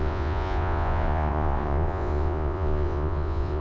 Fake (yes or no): yes